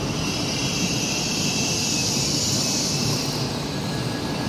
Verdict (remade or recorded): recorded